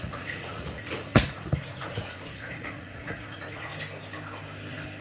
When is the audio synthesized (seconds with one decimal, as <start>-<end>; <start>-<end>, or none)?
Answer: 0.0-3.7